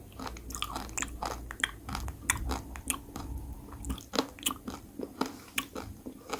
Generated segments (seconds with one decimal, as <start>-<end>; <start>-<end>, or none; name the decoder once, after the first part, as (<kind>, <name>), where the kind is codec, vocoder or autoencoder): none